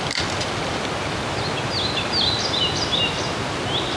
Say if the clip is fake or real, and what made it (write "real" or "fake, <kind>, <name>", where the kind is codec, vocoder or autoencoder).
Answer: real